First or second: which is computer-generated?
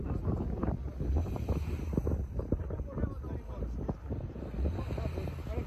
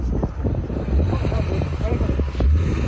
second